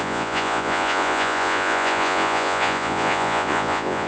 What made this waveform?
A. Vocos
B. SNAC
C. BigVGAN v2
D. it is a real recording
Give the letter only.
A